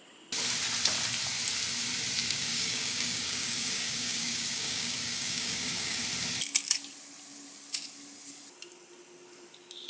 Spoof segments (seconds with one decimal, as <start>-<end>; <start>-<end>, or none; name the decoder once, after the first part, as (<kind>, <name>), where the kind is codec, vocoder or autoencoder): 2.2-6.0 (codec, DAC)